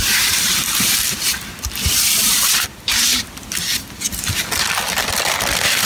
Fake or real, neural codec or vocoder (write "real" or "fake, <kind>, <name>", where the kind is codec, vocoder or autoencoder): real